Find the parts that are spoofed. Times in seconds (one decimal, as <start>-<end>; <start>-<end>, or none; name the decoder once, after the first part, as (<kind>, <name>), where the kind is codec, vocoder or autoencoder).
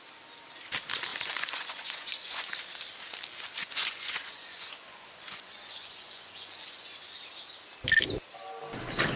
1.1-2.5 (vocoder, Vocos); 3.6-7.2